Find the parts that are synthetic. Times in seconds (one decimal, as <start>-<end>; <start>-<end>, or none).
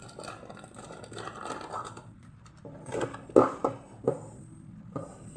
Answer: none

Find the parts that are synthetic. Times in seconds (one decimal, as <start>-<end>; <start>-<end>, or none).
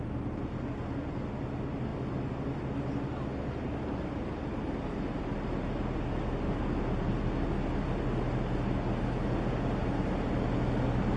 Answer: none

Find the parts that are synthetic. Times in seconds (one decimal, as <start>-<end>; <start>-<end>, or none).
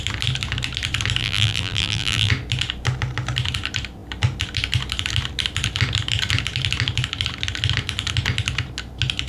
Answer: 1.2-2.3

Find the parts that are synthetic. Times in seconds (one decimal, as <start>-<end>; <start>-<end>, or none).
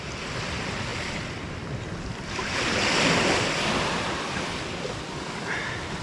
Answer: none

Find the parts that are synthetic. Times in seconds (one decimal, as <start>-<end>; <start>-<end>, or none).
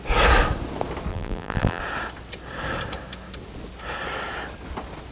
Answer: 1.1-1.8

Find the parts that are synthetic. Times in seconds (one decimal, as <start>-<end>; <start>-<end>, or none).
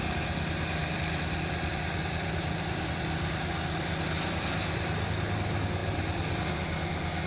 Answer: 0.8-5.1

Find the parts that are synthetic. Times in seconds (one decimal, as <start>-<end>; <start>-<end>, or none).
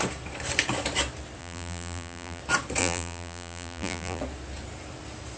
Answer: 1.4-2.4; 2.8-4.2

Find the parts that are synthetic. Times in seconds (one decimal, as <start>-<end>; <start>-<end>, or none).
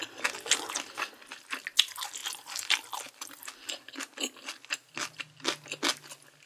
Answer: none